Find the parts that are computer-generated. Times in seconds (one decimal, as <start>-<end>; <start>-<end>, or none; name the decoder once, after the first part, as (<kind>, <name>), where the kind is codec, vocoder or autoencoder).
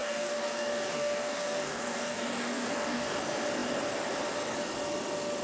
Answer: 0.0-3.2 (codec, DAC)